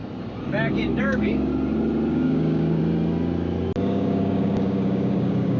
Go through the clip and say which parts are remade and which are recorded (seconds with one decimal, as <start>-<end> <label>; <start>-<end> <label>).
0.0-1.0 recorded; 1.0-1.5 remade; 1.5-2.1 recorded; 2.1-2.8 remade; 2.8-3.8 recorded; 3.8-5.6 remade